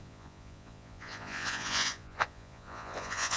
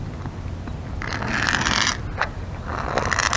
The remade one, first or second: first